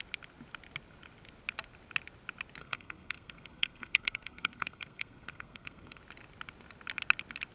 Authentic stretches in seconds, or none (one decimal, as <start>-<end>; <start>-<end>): 0.0-2.6; 6.0-7.5